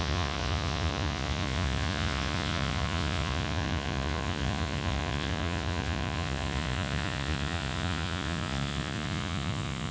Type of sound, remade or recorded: remade